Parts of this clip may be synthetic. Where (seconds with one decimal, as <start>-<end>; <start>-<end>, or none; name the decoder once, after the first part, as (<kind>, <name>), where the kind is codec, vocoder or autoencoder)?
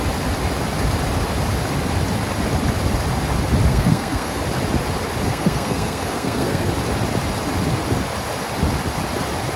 3.7-4.4 (codec, SNAC); 5.3-6.7